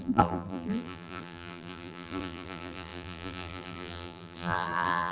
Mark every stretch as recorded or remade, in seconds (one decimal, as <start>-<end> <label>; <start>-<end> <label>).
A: 0.0-5.1 remade